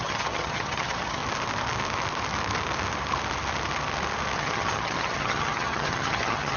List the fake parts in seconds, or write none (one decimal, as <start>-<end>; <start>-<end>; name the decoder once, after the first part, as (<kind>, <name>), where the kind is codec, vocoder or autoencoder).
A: 0.0-1.2 (vocoder, HiFi-GAN); 4.4-6.6